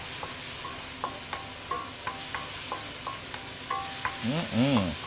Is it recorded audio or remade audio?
recorded